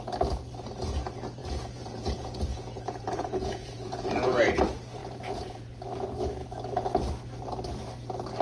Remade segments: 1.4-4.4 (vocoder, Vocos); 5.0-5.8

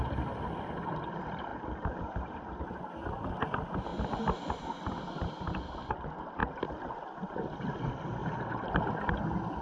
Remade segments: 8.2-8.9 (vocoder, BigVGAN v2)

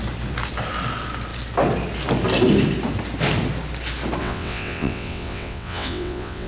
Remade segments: 4.2-6.5 (vocoder, WaveNeXt)

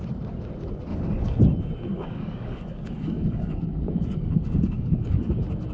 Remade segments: 0.9-1.4 (codec, DAC); 1.9-5.3

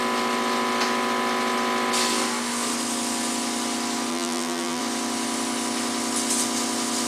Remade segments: 4.1-4.8 (vocoder, BigVGAN v2)

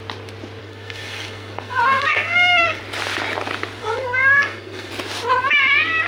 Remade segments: 0.6-2.8 (codec, SNAC); 3.8-4.9

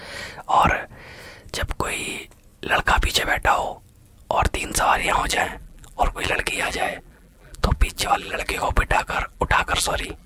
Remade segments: 5.0-10.3 (vocoder, BigVGAN v2)

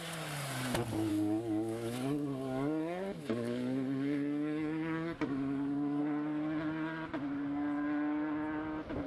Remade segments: 1.1-6.0 (codec, DAC)